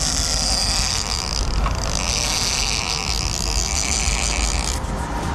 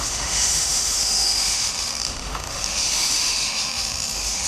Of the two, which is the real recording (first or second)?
first